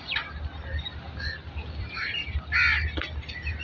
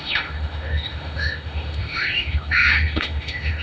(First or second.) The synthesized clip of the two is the second